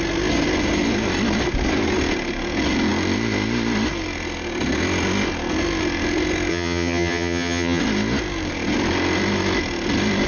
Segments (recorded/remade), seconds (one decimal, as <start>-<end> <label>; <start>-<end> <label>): 0.0-6.5 recorded; 6.5-7.8 remade; 7.8-10.3 recorded